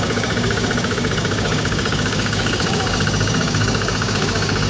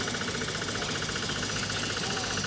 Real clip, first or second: second